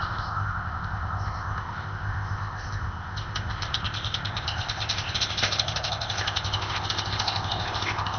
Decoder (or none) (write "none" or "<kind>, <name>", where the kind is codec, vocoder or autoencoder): codec, ZipCodec